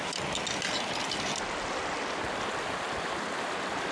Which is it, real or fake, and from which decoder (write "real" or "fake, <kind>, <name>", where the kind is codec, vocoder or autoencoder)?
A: real